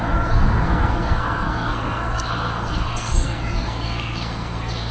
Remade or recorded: remade